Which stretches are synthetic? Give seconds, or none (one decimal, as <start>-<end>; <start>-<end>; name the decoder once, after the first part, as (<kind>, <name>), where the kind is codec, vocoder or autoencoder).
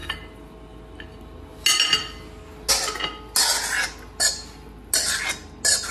none